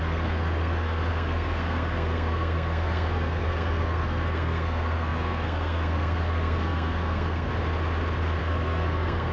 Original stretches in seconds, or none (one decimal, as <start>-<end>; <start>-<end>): 7.5-8.4